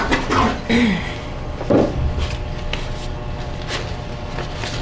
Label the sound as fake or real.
real